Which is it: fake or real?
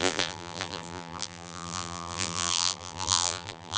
fake